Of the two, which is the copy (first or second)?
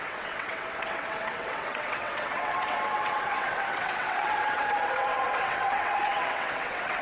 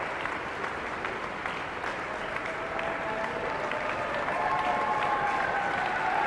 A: first